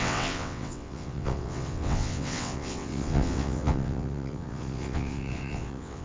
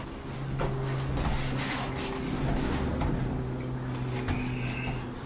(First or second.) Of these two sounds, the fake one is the first